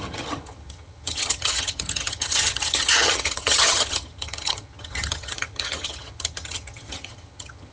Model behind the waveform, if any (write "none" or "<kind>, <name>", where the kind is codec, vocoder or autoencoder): vocoder, HiFi-GAN